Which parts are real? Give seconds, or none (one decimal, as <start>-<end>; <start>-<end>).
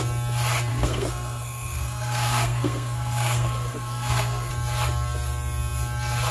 0.0-0.7; 4.5-6.3